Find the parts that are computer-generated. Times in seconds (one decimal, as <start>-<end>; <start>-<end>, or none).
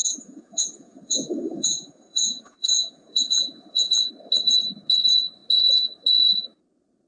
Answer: 0.0-4.1